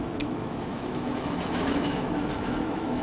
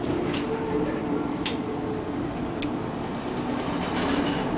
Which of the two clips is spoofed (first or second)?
first